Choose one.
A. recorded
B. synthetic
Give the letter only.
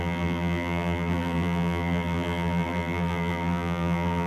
B